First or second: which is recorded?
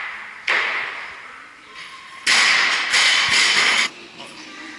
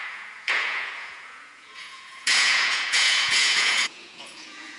first